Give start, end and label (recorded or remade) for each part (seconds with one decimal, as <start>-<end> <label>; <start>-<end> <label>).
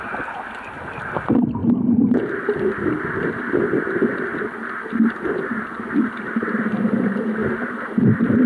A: 0.0-7.4 recorded; 7.4-8.5 remade